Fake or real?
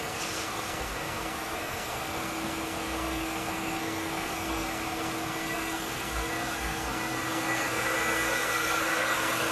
fake